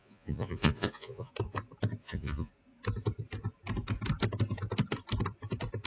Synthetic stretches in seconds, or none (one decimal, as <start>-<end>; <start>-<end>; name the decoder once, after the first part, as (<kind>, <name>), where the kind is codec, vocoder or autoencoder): 0.0-1.3 (vocoder, Vocos); 2.0-2.5